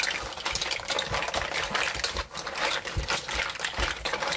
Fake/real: real